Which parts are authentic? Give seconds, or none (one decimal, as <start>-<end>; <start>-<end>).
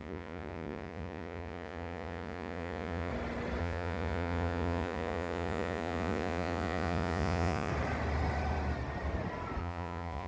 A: 3.1-3.6; 7.7-9.6